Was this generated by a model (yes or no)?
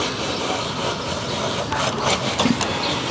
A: no